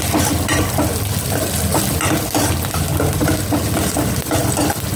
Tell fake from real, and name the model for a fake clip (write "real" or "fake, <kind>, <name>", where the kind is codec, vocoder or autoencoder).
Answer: real